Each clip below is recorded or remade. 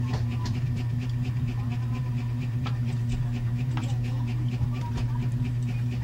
remade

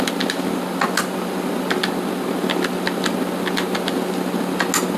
recorded